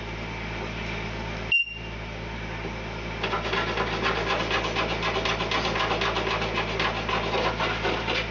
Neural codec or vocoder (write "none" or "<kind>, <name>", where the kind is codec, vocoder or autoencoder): none